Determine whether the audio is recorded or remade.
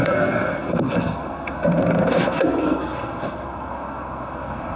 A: remade